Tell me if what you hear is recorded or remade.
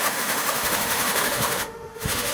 remade